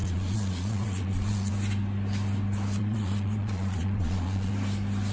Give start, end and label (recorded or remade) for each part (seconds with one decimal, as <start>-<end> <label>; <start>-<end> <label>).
0.0-1.5 remade; 1.5-2.8 recorded; 2.8-4.5 remade; 4.5-5.1 recorded